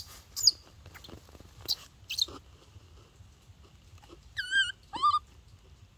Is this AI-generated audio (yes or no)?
no